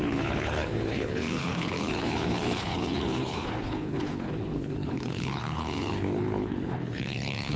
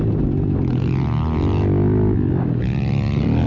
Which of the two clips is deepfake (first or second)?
first